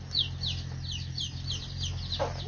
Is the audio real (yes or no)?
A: yes